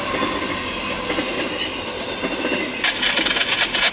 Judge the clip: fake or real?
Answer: real